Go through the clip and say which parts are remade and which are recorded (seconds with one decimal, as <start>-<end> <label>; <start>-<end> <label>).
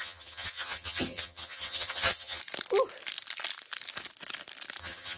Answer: 0.0-2.4 remade; 2.4-4.8 recorded; 4.8-5.2 remade